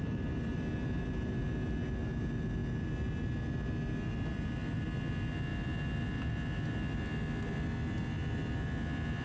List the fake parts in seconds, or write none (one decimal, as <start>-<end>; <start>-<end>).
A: none